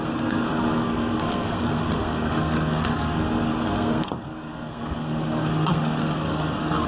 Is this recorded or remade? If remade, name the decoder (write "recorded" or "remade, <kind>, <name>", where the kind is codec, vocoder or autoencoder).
remade, codec, SNAC